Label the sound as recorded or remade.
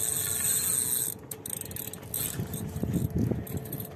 recorded